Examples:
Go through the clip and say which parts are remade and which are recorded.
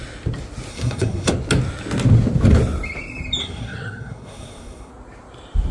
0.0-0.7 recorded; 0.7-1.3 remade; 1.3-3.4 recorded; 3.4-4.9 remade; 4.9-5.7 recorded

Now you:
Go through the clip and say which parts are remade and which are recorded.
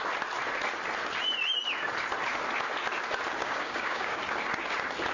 0.0-3.4 recorded; 3.4-4.2 remade; 4.2-5.1 recorded